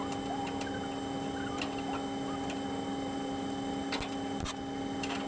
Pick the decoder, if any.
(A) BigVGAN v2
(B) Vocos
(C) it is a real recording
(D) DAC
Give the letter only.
C